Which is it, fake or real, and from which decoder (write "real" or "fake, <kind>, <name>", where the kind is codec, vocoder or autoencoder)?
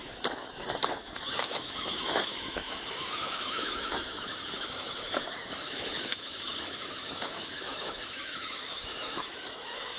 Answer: fake, autoencoder, DAC-VAE